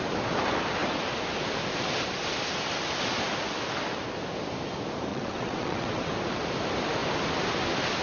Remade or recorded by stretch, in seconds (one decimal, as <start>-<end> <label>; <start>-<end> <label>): 0.0-5.1 recorded; 5.1-6.1 remade; 6.1-8.0 recorded